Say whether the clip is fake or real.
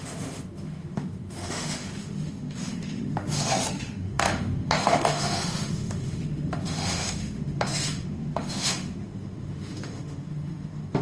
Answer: fake